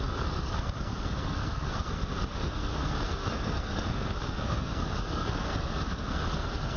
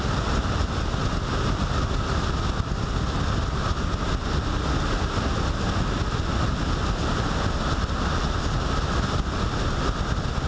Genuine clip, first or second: second